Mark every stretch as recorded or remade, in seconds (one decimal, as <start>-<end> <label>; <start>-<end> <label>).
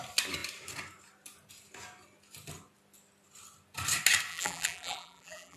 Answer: 0.0-4.3 recorded; 4.3-5.6 remade